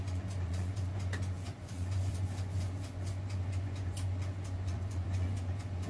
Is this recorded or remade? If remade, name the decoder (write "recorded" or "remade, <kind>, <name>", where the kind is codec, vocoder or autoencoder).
remade, vocoder, Vocos